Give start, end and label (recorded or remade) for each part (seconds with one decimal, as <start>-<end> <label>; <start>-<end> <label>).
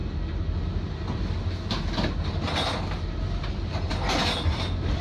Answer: 0.0-5.0 recorded